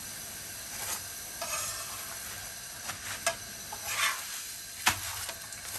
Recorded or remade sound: recorded